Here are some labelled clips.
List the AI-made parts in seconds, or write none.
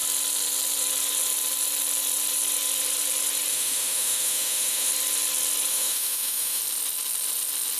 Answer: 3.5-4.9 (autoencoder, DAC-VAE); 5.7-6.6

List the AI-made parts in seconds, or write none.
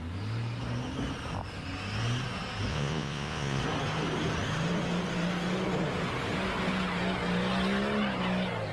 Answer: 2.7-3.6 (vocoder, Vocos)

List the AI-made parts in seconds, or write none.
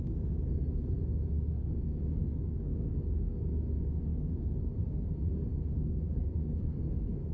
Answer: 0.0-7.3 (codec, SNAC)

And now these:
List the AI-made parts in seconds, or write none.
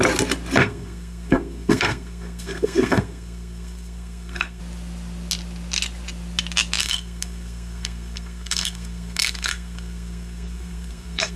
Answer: 0.6-4.6 (codec, SNAC); 6.8-11.4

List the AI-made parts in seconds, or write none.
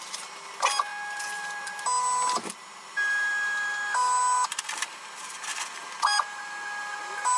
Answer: none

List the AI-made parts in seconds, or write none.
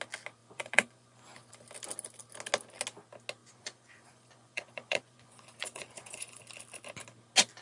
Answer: 0.4-1.5 (vocoder, Vocos); 3.4-6.4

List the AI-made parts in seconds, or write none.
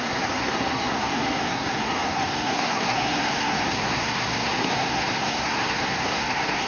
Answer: 0.0-6.7 (codec, SNAC)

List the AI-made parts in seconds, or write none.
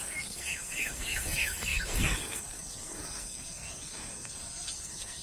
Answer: 0.0-5.2 (codec, SNAC)